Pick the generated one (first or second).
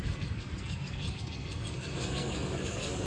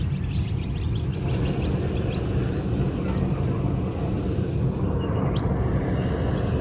first